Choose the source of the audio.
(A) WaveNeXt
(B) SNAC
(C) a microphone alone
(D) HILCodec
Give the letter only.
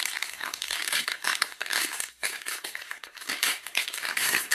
B